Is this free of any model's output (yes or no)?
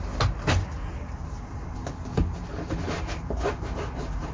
yes